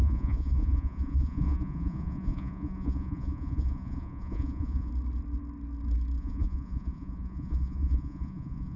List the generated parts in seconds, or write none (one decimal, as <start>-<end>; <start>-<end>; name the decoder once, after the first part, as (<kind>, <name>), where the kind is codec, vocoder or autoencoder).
0.0-4.9 (vocoder, Vocos); 6.2-8.8